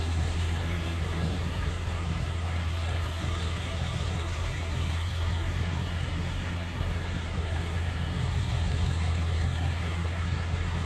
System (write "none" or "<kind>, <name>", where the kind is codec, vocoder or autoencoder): codec, SNAC